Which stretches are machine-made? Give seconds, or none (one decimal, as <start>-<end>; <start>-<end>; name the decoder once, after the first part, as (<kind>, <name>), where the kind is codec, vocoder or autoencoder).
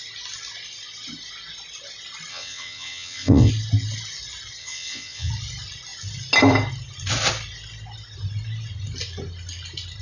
2.3-3.5 (vocoder, WaveNeXt); 4.6-5.3